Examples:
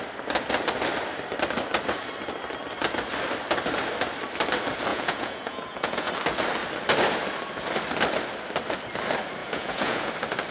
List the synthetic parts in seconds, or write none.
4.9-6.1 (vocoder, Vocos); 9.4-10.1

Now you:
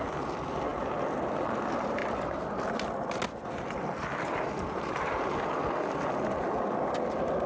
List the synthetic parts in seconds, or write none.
none